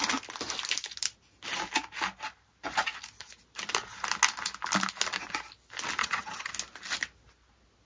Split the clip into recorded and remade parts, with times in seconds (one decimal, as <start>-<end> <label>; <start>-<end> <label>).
0.0-6.0 recorded; 6.0-6.5 remade; 6.5-7.9 recorded